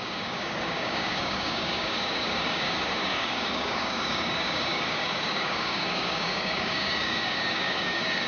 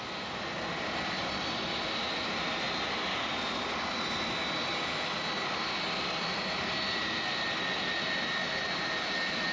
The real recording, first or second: second